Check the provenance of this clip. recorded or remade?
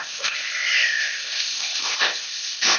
remade